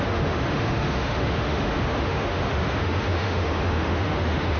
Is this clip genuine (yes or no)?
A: no